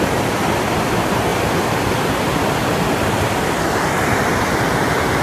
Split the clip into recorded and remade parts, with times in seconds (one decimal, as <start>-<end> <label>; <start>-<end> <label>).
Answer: 0.0-5.2 recorded